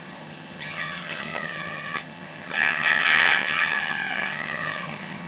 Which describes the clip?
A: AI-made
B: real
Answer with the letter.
A